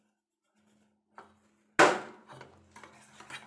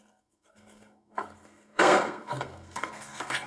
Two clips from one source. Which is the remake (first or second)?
second